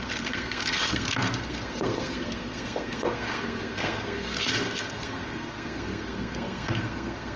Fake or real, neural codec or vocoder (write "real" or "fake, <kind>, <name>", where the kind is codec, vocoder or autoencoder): fake, codec, SNAC